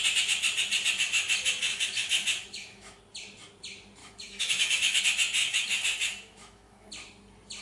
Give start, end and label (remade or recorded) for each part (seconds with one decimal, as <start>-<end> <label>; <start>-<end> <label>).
0.0-1.7 recorded; 1.7-3.0 remade; 3.0-4.0 recorded; 4.0-5.0 remade; 5.0-5.4 recorded; 5.4-6.9 remade; 6.9-7.6 recorded